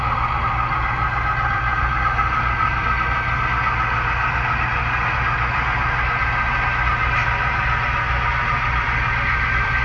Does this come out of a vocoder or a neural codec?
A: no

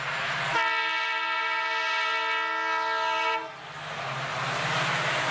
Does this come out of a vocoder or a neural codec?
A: no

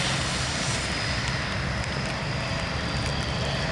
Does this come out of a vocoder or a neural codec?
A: no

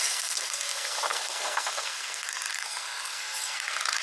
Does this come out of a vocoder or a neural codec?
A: yes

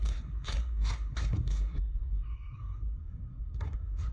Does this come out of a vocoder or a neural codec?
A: yes